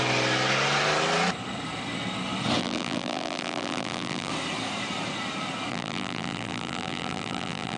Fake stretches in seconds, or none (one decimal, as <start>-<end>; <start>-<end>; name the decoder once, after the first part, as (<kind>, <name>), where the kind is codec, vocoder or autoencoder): 2.6-4.3 (vocoder, BigVGAN v2); 5.7-7.8